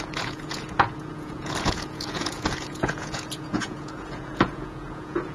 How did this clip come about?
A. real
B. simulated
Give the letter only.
B